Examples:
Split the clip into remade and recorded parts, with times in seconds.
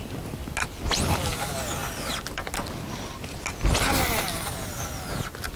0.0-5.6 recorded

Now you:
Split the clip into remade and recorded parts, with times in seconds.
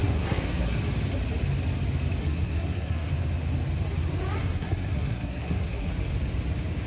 0.0-0.8 remade; 0.8-2.2 recorded; 2.2-3.1 remade; 3.1-4.4 recorded; 4.4-5.9 remade; 5.9-6.9 recorded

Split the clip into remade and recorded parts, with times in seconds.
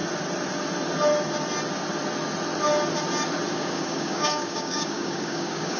0.0-3.5 recorded; 3.5-5.8 remade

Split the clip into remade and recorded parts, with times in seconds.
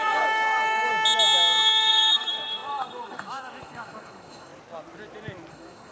0.0-0.9 remade; 0.9-1.9 recorded; 1.9-4.5 remade; 4.5-5.5 recorded; 5.5-5.9 remade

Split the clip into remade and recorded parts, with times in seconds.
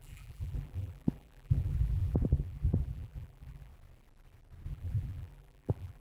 0.0-3.7 remade; 3.7-4.7 recorded; 4.7-6.0 remade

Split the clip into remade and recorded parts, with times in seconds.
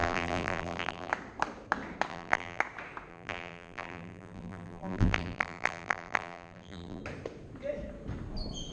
0.0-1.1 remade; 1.1-2.1 recorded; 2.1-2.6 remade; 2.6-3.1 recorded; 3.1-7.0 remade; 7.0-8.7 recorded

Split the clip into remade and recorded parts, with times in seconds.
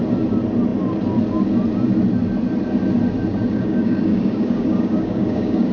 0.0-3.5 recorded; 3.5-5.7 remade